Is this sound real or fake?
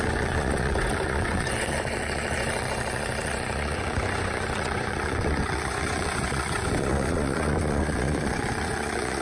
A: fake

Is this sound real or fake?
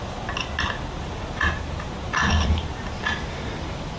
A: real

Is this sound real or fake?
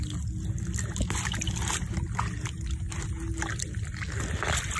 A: real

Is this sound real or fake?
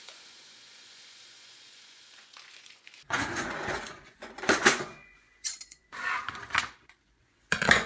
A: fake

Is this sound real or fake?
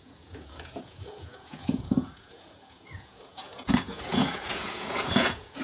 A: fake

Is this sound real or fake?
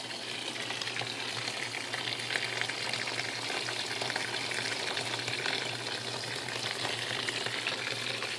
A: real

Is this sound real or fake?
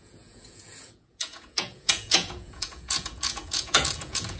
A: fake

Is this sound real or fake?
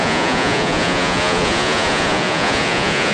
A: fake